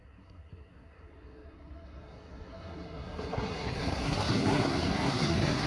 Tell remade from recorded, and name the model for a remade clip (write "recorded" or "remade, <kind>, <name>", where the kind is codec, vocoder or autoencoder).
remade, codec, SNAC